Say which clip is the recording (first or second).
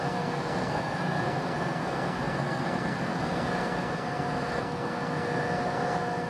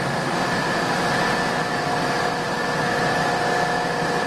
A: second